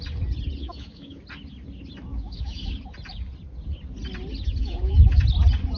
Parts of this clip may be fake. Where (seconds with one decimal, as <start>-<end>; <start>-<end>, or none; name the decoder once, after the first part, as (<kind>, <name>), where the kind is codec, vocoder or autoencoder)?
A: 0.6-1.2 (autoencoder, DAC-VAE); 2.1-2.7; 4.6-5.2